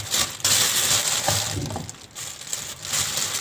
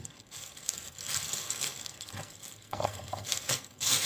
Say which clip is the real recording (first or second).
first